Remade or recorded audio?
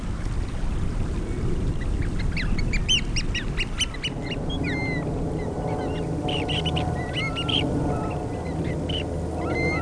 recorded